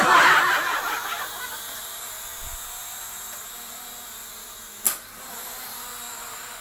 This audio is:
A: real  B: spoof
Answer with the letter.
A